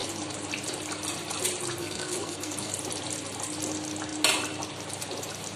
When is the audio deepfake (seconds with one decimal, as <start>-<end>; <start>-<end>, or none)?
1.8-2.7